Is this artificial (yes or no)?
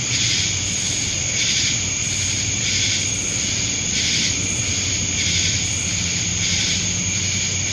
no